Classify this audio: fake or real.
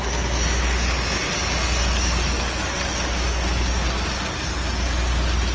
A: real